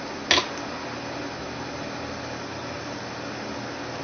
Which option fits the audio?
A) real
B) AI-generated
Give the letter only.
A